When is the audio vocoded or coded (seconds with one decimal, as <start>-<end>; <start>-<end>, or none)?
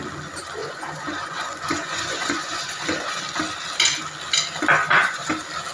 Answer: 0.6-3.2; 4.7-5.3